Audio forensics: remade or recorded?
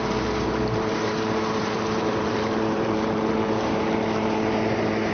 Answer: remade